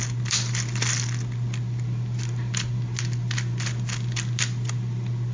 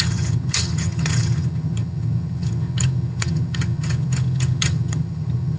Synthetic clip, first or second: second